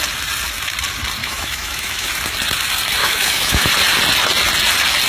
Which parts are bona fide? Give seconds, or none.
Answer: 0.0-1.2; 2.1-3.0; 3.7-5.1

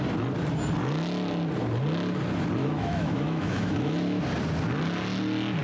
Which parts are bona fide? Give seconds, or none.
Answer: 0.0-2.6; 4.2-5.6

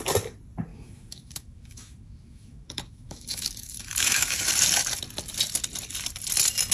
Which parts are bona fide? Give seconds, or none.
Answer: 0.0-0.7; 4.5-6.7

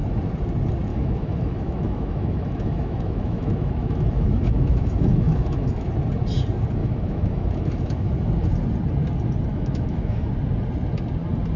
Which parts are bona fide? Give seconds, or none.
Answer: 0.0-0.9; 5.9-6.8; 8.1-9.5; 10.3-11.6

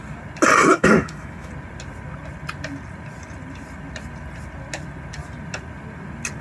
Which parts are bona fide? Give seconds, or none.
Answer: 0.0-0.7; 1.5-6.4

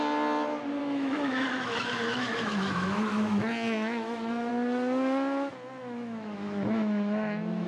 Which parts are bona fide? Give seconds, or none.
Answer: 0.0-0.8; 4.5-5.8